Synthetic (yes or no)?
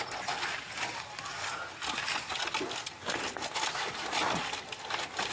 no